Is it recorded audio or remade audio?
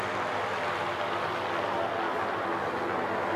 recorded